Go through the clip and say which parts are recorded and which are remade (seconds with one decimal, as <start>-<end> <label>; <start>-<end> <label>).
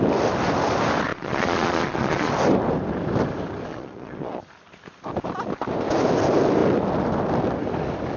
0.0-1.1 recorded; 1.1-2.3 remade; 2.3-3.7 recorded; 3.7-4.4 remade; 4.4-8.2 recorded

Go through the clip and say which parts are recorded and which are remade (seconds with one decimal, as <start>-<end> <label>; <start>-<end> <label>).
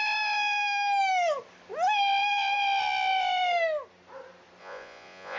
0.0-4.6 recorded; 4.6-5.4 remade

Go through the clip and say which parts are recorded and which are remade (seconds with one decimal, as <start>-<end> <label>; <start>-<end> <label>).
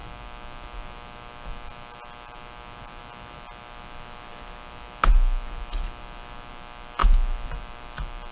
0.0-8.3 recorded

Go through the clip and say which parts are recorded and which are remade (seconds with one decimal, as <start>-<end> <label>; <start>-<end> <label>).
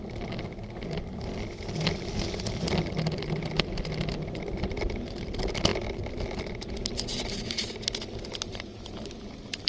0.0-9.7 recorded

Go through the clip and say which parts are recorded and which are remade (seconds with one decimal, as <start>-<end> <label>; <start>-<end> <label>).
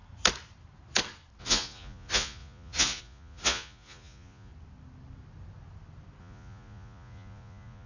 0.0-1.4 recorded; 1.4-4.5 remade; 4.5-6.2 recorded; 6.2-7.9 remade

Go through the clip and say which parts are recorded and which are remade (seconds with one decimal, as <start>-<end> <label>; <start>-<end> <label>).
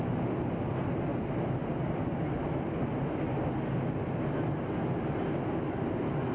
0.0-6.3 recorded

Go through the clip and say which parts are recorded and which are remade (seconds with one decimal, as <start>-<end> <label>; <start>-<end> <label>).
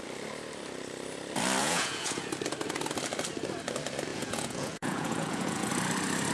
0.0-1.6 recorded; 1.6-2.3 remade; 2.3-4.1 recorded; 4.1-5.7 remade; 5.7-6.3 recorded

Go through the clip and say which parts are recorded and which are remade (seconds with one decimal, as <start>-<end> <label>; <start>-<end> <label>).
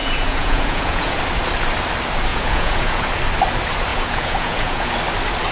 0.0-1.2 remade; 1.2-2.3 recorded; 2.3-3.1 remade; 3.1-3.9 recorded; 3.9-4.9 remade; 4.9-5.5 recorded